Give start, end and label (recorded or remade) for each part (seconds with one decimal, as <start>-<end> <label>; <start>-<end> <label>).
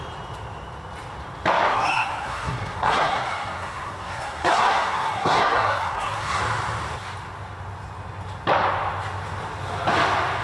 0.0-1.7 recorded; 1.7-6.4 remade; 6.4-10.4 recorded